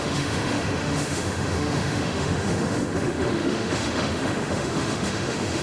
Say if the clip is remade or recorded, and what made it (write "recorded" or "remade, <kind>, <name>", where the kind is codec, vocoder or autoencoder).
remade, autoencoder, DAC-VAE